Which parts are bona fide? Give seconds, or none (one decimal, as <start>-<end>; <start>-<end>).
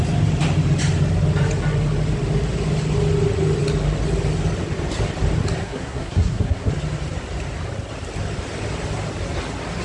0.0-5.6; 6.7-9.8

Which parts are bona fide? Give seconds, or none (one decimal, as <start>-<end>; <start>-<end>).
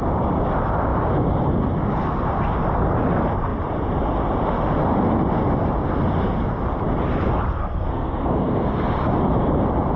0.0-7.6; 8.7-10.0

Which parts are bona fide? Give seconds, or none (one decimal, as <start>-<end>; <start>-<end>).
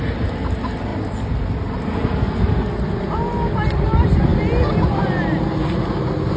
0.0-6.4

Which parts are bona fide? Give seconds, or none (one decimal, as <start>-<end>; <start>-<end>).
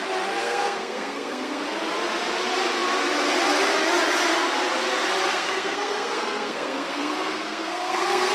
0.0-0.4; 1.6-5.3